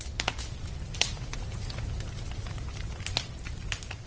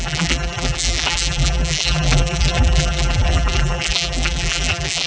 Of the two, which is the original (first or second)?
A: first